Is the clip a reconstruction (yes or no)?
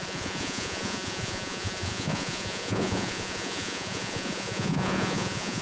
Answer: yes